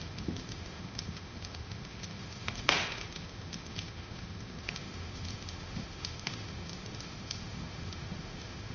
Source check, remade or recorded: remade